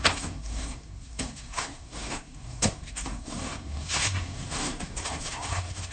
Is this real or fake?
fake